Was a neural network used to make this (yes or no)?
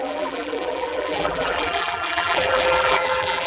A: yes